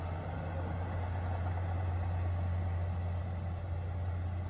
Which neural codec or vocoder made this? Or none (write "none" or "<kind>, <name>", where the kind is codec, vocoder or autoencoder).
none